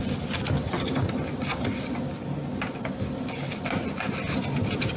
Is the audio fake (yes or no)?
no